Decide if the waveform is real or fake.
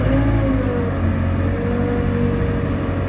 real